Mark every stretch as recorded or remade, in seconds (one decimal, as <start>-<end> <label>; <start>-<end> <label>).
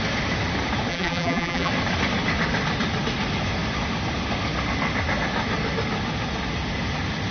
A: 0.0-0.9 recorded; 0.9-1.7 remade; 1.7-7.3 recorded